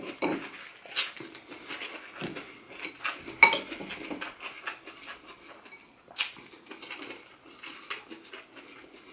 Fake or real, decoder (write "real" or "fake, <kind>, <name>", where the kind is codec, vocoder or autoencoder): real